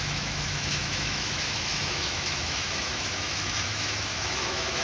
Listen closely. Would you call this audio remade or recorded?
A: remade